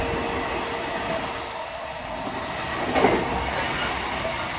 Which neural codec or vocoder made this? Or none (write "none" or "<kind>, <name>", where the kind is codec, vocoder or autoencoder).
none